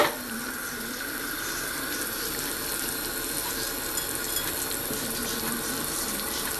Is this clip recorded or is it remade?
remade